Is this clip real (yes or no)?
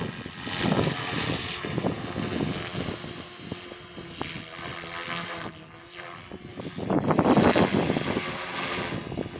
yes